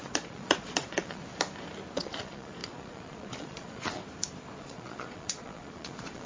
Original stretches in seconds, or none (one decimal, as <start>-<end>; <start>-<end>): 1.2-1.9; 4.0-4.6